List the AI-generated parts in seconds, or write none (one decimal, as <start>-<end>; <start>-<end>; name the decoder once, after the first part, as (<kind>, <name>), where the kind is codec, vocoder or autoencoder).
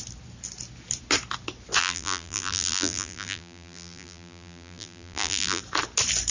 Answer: 1.8-5.6 (vocoder, BigVGAN v2)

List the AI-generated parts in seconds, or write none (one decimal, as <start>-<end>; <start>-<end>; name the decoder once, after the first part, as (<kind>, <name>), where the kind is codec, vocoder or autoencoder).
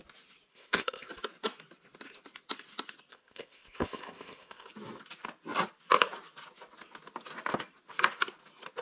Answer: 0.5-1.1 (codec, ZipCodec); 3.1-4.7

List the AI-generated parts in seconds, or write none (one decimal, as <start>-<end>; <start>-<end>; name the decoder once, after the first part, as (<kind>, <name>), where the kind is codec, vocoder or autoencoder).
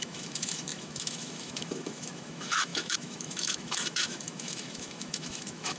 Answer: 0.0-5.8 (autoencoder, DAC-VAE)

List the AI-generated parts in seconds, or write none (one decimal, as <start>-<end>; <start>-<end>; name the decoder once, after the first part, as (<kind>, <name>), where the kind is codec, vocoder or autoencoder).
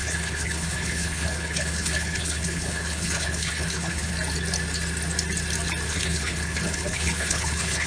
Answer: 0.0-4.1 (codec, HILCodec); 5.9-7.9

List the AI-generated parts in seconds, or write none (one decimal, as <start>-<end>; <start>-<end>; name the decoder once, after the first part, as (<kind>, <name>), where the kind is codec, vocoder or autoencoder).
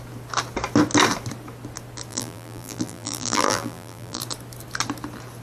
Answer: 2.1-4.2 (vocoder, BigVGAN v2)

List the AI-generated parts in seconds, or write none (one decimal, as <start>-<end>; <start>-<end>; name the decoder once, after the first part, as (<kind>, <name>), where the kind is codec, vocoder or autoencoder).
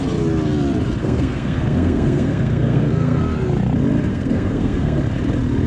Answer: 1.0-3.2 (codec, SNAC); 4.1-5.0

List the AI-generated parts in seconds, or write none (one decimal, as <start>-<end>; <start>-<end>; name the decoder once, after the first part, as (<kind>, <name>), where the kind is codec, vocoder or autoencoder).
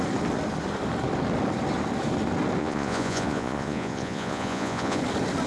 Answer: 2.6-5.0 (vocoder, Vocos)